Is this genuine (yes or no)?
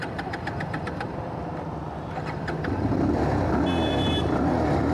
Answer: no